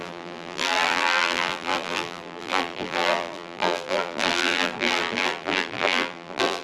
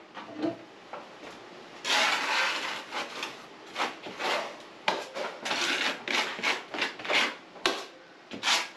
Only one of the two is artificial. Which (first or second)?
first